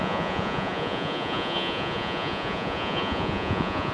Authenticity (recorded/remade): remade